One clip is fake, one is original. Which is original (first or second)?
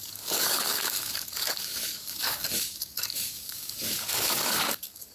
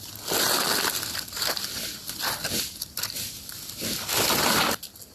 second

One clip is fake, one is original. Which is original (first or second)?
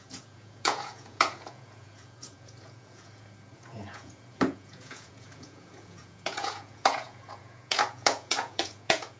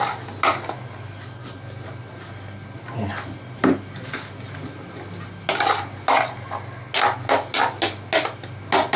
second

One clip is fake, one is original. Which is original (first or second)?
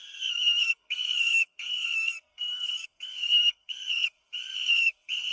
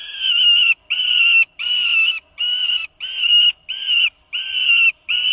second